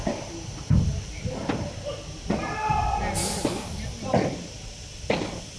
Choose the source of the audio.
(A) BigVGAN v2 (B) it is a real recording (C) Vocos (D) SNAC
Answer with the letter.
B